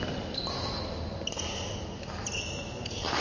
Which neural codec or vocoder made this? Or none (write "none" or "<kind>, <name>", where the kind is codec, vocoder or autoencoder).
none